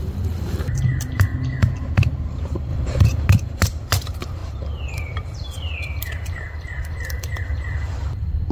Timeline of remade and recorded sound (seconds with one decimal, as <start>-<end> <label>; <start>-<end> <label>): 0.0-1.3 remade; 1.3-2.3 recorded; 2.3-8.5 remade